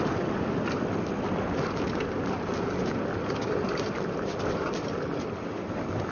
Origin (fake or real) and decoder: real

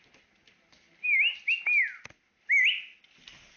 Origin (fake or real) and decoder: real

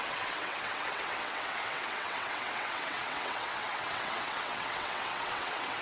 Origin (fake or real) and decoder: fake, vocoder, WaveNeXt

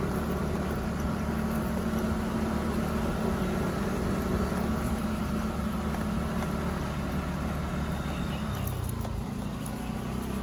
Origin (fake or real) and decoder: real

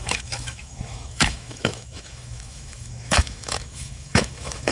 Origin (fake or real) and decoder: fake, autoencoder, DAC-VAE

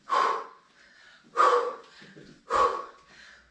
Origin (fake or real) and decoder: real